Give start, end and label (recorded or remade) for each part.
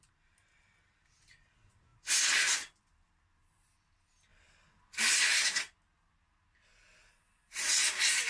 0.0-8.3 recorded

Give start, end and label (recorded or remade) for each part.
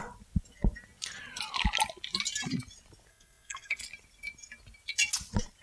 0.0-3.1 recorded; 3.1-3.8 remade; 3.8-5.6 recorded